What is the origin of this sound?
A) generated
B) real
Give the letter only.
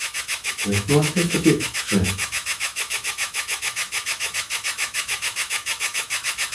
A